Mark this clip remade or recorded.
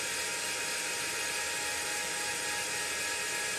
recorded